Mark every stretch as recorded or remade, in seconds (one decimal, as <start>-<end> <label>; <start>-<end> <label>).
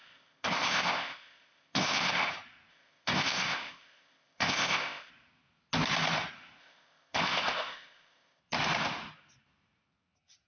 0.0-2.3 remade; 2.3-2.7 recorded; 2.7-5.1 remade; 5.1-6.6 recorded; 6.6-8.4 remade; 8.4-10.5 recorded